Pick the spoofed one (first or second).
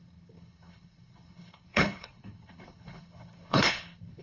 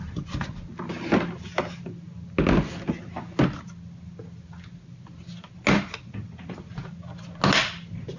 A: first